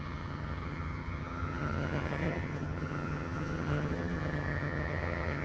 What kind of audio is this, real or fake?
fake